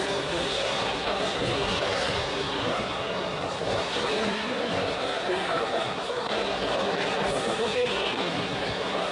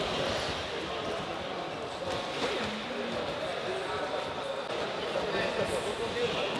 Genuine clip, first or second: second